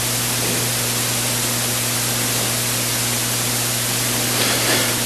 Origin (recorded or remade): recorded